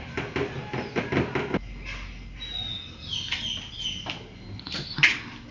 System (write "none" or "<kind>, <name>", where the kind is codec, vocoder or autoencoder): none